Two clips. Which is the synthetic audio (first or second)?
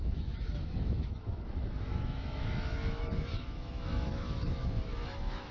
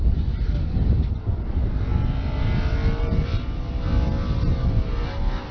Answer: first